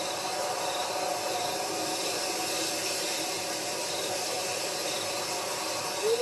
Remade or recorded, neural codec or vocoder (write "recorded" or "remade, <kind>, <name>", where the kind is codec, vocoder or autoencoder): recorded